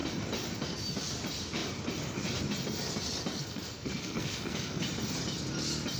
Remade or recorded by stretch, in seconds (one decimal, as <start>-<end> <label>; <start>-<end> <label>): 0.0-3.3 recorded; 3.3-4.8 remade; 4.8-6.0 recorded

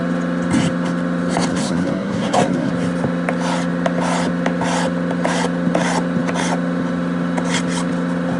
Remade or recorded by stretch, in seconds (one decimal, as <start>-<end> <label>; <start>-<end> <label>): 0.0-1.5 recorded; 1.5-2.7 remade; 2.7-8.4 recorded

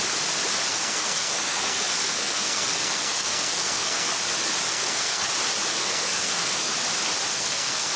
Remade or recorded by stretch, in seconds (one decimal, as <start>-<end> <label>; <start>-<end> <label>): 0.0-0.7 recorded; 0.7-4.2 remade; 4.2-4.7 recorded; 4.7-5.3 remade; 5.3-5.7 recorded; 5.7-6.7 remade; 6.7-7.3 recorded; 7.3-8.0 remade